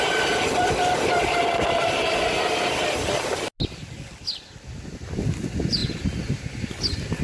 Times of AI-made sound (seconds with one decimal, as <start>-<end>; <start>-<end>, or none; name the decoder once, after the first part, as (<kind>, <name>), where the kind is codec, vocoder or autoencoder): 1.8-2.8 (vocoder, BigVGAN v2)